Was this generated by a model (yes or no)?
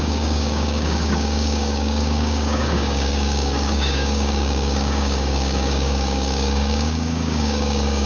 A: yes